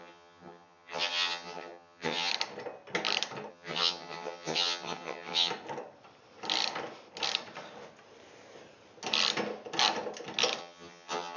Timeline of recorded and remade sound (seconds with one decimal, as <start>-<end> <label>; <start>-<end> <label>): 0.0-2.3 remade; 2.3-3.5 recorded; 3.5-5.5 remade; 5.5-10.6 recorded; 10.6-11.4 remade